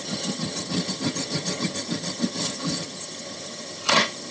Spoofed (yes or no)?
yes